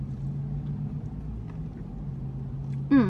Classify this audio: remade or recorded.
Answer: recorded